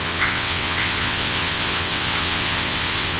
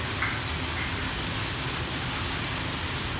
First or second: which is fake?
first